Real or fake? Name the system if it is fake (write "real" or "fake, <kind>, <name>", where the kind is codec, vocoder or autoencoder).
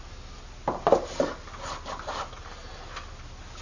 real